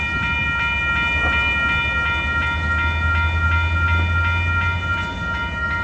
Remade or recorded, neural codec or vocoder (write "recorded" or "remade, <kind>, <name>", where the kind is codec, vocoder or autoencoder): recorded